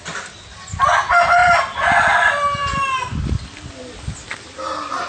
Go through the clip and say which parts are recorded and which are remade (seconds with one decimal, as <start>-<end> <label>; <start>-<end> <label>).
0.0-1.4 recorded; 1.4-3.3 remade; 3.3-4.3 recorded; 4.3-5.1 remade